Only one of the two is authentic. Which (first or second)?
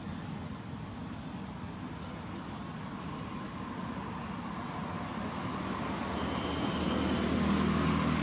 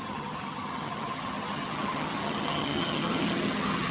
first